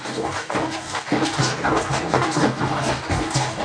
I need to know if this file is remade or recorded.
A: remade